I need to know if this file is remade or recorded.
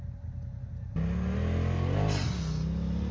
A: recorded